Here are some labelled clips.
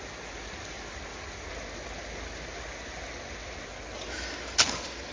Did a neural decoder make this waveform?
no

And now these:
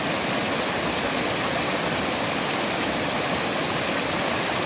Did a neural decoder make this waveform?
no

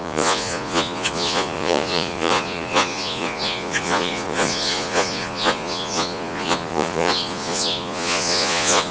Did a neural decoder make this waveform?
yes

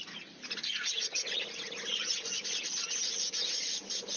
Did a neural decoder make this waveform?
no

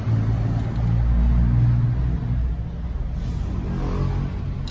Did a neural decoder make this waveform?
no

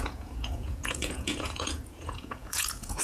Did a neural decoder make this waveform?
yes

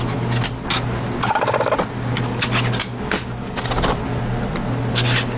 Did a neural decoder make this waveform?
no